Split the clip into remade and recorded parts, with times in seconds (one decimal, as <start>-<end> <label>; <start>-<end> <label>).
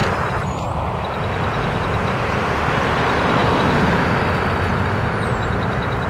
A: 0.0-2.9 recorded; 2.9-3.4 remade; 3.4-4.8 recorded; 4.8-6.1 remade